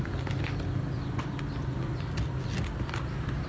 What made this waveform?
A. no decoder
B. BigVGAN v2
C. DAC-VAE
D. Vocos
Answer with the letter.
B